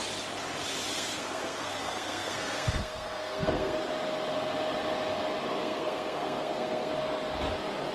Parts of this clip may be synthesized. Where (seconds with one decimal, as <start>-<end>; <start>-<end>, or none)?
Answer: 0.9-3.8; 5.6-6.9